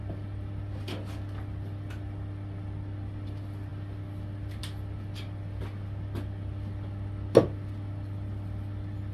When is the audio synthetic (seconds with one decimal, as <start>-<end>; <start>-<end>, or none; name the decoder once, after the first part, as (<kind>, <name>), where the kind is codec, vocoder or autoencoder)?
none